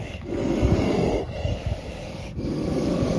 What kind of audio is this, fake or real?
fake